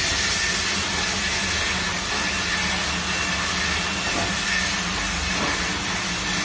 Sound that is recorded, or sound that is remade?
recorded